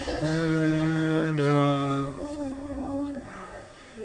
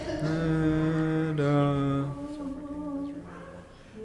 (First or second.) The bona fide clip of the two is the second